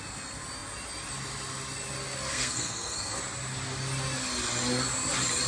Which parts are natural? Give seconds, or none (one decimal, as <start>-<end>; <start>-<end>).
0.0-2.3; 3.2-5.5